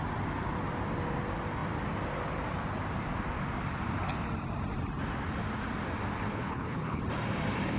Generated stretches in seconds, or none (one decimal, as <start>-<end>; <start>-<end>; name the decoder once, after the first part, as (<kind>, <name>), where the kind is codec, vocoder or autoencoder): 6.3-7.0 (codec, HILCodec)